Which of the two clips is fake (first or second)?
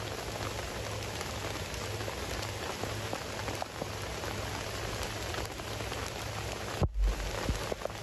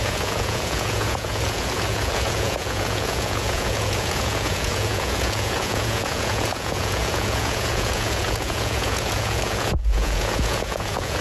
second